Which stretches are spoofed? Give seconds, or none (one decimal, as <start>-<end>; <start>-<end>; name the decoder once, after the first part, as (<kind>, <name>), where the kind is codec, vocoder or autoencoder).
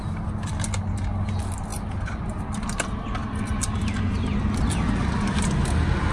none